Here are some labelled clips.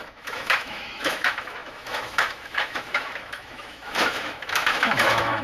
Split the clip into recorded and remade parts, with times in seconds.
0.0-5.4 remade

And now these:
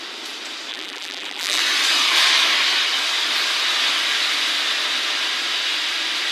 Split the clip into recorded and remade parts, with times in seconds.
0.0-0.7 recorded; 0.7-1.6 remade; 1.6-6.3 recorded